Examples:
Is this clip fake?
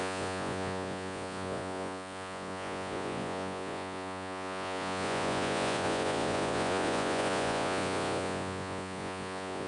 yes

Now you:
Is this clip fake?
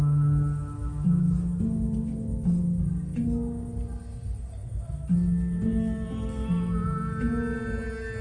no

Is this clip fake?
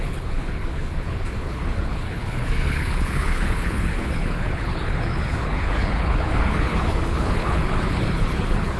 yes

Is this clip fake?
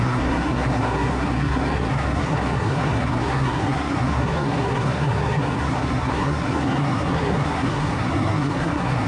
yes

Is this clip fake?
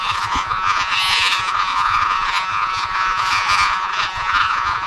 yes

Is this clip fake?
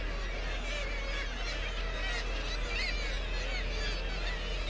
no